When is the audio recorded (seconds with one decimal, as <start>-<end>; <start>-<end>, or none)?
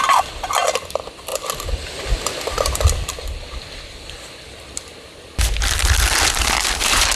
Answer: 0.0-7.2